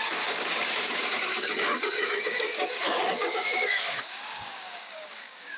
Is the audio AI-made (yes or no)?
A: yes